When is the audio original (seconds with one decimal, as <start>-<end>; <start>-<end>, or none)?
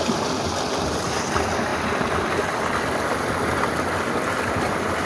0.0-5.1